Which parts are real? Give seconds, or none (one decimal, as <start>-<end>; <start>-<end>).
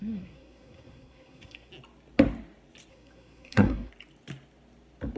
1.7-2.9; 3.9-5.2